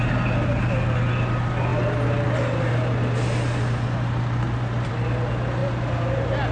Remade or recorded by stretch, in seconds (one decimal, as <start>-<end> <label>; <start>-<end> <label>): 0.0-6.5 recorded